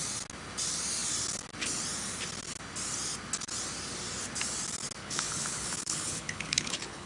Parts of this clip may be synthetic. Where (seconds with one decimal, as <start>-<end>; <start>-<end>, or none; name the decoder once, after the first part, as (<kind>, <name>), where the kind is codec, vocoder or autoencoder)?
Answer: 5.0-7.1 (codec, HILCodec)